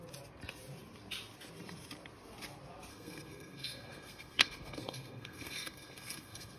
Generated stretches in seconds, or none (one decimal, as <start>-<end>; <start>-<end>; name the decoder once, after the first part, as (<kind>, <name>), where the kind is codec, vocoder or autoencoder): 2.9-6.6 (codec, SNAC)